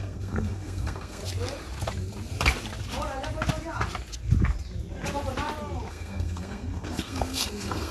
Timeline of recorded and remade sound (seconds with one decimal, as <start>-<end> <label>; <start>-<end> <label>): 0.0-1.2 remade; 1.2-5.9 recorded; 5.9-7.9 remade